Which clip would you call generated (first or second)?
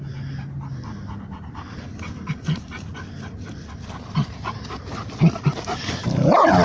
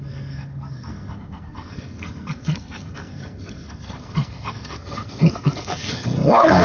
second